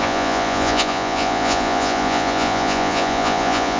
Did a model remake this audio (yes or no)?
yes